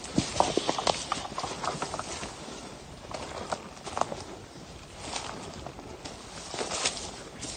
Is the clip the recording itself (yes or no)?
yes